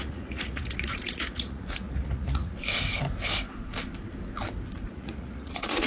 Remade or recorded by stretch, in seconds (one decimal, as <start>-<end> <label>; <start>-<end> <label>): 0.0-2.6 remade; 2.6-4.9 recorded; 4.9-5.9 remade